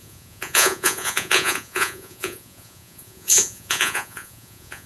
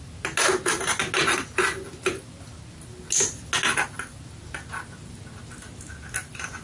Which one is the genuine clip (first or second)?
second